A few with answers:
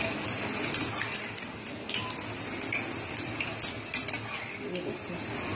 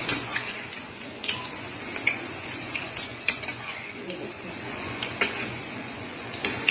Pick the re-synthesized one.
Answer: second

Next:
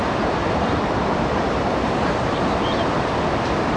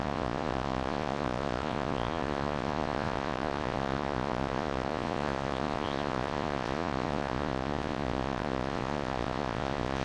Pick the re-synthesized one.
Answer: second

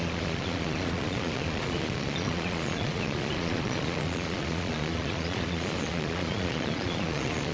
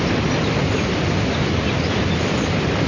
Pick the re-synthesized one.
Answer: first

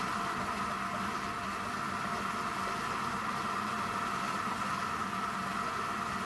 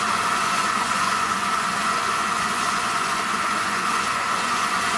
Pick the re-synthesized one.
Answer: second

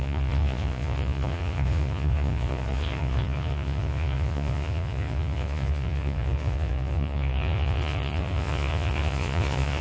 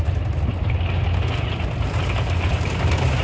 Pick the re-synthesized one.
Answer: first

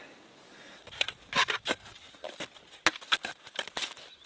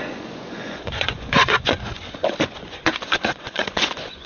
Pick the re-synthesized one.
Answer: second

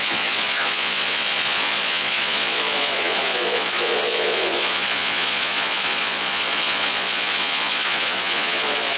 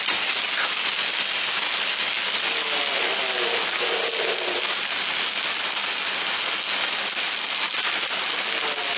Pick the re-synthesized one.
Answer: first